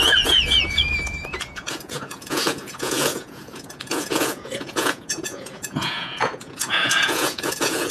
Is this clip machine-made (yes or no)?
yes